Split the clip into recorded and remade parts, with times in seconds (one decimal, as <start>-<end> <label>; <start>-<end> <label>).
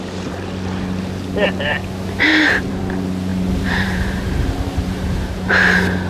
0.0-2.3 recorded; 2.3-2.8 remade; 2.8-3.3 recorded; 3.3-5.6 remade; 5.6-6.1 recorded